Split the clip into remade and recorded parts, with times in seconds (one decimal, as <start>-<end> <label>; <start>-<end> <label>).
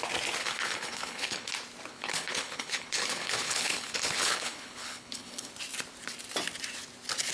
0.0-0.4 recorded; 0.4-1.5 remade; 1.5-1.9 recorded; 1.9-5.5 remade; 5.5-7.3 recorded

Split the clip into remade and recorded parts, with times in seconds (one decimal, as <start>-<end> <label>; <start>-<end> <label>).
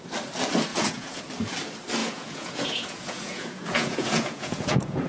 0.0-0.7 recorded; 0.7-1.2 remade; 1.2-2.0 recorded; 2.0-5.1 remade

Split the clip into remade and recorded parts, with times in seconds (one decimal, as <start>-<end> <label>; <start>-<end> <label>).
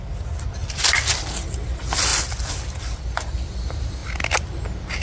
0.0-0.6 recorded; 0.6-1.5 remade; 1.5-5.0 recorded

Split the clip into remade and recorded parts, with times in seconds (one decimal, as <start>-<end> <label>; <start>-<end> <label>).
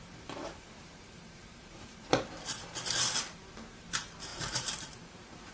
0.0-5.5 remade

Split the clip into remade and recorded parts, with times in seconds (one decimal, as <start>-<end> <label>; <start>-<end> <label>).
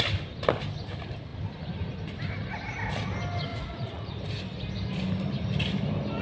0.0-3.5 recorded; 3.5-4.2 remade; 4.2-6.2 recorded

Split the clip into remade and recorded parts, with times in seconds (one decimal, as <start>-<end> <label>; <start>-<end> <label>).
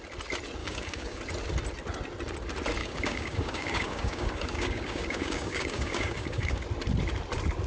0.0-0.6 recorded; 0.6-1.2 remade; 1.2-2.8 recorded; 2.8-6.6 remade; 6.6-7.7 recorded